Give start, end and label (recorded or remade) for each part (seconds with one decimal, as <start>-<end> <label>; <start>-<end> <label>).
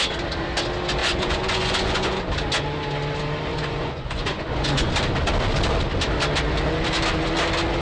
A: 0.0-1.0 recorded; 1.0-2.2 remade; 2.2-3.5 recorded; 3.5-4.9 remade; 4.9-7.8 recorded